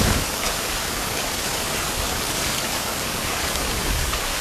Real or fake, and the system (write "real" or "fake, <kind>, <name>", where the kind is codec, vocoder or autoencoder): fake, codec, DAC